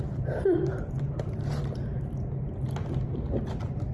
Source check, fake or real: real